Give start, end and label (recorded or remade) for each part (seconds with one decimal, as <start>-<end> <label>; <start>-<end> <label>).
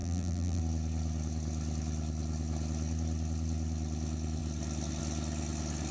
0.0-0.6 remade; 0.6-5.9 recorded